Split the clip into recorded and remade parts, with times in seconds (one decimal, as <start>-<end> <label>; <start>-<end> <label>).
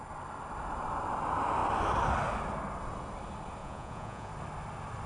0.0-3.6 recorded; 3.6-4.3 remade; 4.3-5.1 recorded